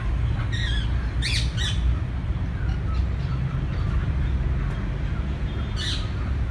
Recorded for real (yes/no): yes